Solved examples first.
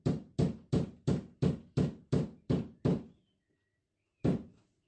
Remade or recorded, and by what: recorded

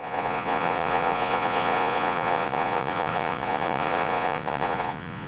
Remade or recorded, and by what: remade, vocoder, Vocos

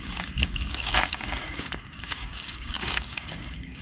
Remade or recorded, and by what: remade, codec, DAC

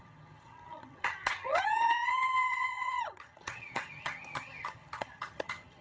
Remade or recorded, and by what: remade, vocoder, HiFi-GAN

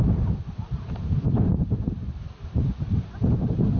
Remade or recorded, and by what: recorded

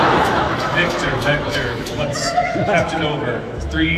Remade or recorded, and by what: remade, autoencoder, DAC-VAE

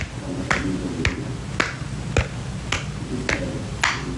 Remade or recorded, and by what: recorded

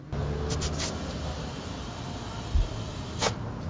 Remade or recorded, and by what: recorded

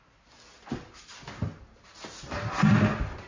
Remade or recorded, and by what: recorded